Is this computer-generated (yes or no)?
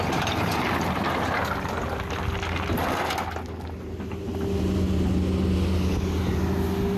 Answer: no